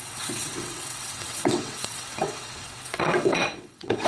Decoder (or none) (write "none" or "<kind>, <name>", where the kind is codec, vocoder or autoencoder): vocoder, WaveNeXt